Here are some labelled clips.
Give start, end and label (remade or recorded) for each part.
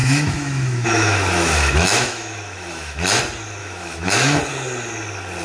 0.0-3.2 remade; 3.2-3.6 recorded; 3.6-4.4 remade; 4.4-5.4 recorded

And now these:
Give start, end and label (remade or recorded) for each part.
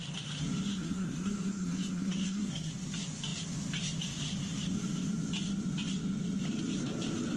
0.0-0.7 recorded; 0.7-2.7 remade; 2.7-7.4 recorded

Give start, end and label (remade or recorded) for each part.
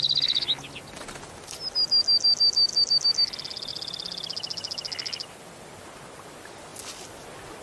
0.0-7.6 recorded